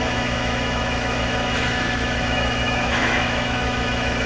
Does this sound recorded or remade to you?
remade